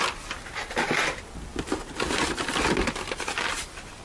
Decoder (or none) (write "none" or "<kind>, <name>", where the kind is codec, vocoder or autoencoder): none